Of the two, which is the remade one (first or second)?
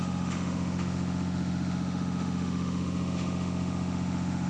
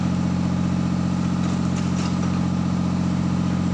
first